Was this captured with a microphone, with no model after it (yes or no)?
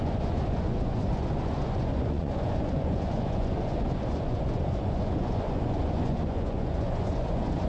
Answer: no